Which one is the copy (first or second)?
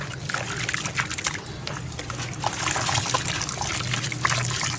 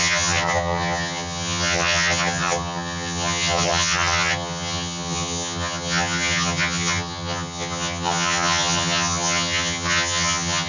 second